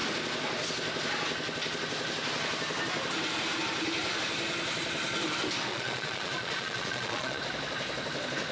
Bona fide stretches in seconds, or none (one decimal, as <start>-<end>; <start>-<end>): 0.0-5.7; 7.4-8.5